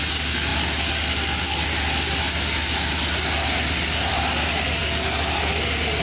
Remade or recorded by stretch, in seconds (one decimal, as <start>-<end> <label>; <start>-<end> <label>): 0.0-6.0 recorded